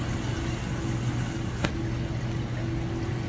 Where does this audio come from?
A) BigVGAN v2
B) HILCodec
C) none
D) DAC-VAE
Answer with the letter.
C